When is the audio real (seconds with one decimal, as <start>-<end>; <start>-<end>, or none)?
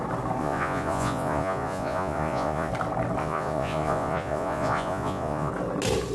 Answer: 0.0-0.4; 2.7-3.2; 5.5-6.1